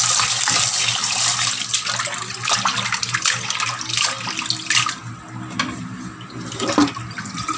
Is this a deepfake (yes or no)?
no